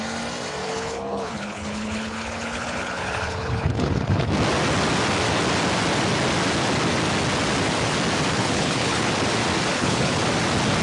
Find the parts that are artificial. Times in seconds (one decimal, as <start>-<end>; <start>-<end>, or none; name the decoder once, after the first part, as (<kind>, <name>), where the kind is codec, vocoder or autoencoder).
0.6-4.3 (codec, HILCodec); 8.3-9.1; 9.7-10.2